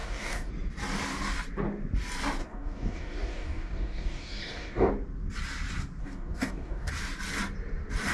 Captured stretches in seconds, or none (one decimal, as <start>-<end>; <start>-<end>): 0.5-2.4; 4.9-6.0; 6.9-8.1